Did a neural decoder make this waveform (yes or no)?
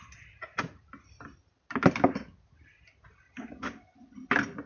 no